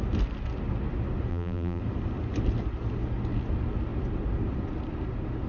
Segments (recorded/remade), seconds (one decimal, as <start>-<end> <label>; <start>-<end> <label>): 0.0-1.3 recorded; 1.3-1.8 remade; 1.8-5.5 recorded